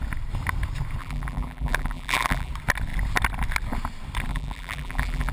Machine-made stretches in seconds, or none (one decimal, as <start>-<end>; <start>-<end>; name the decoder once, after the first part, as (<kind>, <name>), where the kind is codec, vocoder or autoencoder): 1.0-2.5 (vocoder, BigVGAN v2); 4.3-5.3